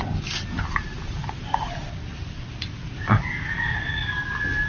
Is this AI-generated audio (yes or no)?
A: no